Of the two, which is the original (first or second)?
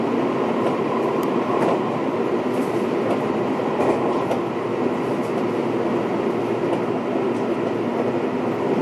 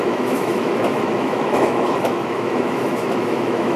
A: first